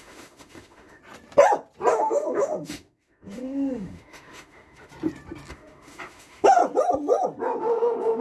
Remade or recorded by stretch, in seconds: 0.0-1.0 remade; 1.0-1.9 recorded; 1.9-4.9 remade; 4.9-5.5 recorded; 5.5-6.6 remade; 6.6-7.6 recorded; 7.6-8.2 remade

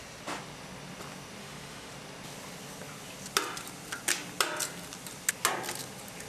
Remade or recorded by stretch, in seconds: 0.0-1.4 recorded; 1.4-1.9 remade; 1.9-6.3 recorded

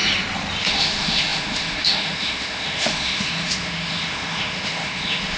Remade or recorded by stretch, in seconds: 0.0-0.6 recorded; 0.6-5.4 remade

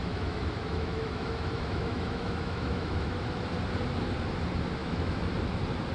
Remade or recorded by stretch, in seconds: 0.0-3.5 remade; 3.5-4.8 recorded; 4.8-5.3 remade; 5.3-5.9 recorded

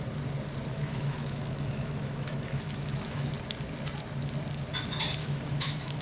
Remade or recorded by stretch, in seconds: 0.0-0.7 recorded; 0.7-3.3 remade; 3.3-5.2 recorded; 5.2-6.0 remade

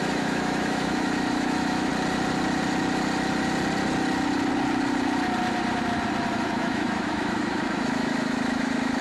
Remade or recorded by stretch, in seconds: 0.0-1.9 remade; 1.9-6.3 recorded; 6.3-9.0 remade

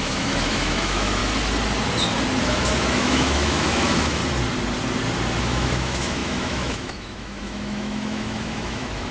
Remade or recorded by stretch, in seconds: 0.0-1.2 remade; 1.2-2.4 recorded; 2.4-4.2 remade; 4.2-5.4 recorded; 5.4-9.1 remade

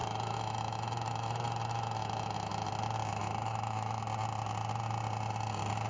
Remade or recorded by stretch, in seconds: 0.0-2.7 remade; 2.7-3.1 recorded; 3.1-4.0 remade; 4.0-5.9 recorded